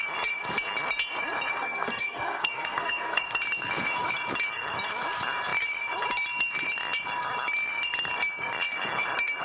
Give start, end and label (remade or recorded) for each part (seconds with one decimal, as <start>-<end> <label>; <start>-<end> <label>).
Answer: 0.0-1.5 recorded; 1.5-3.2 remade; 3.2-9.4 recorded